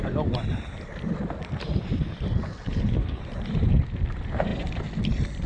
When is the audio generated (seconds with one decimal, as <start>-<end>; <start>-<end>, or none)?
2.5-3.2